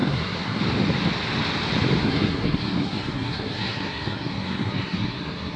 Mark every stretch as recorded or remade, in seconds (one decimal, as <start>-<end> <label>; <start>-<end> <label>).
0.0-0.6 remade; 0.6-2.0 recorded; 2.0-5.6 remade